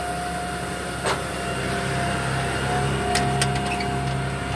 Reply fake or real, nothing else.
real